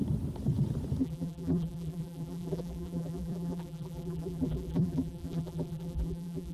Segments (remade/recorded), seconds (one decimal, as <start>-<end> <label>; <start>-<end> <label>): 0.0-1.0 recorded; 1.0-6.5 remade